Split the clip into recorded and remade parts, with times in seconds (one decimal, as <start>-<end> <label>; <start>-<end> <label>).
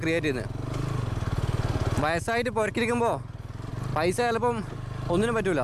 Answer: 0.0-5.6 recorded